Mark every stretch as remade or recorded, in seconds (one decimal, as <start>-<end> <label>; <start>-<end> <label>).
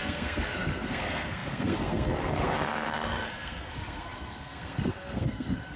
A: 0.0-5.8 remade